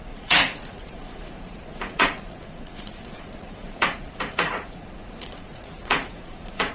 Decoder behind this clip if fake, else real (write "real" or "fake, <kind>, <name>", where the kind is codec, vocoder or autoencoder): fake, vocoder, Vocos